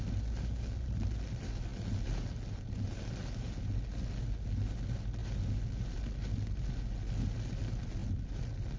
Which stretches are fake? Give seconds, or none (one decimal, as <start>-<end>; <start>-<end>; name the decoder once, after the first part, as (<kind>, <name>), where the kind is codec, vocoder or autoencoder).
none